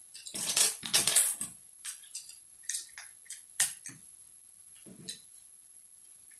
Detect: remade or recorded remade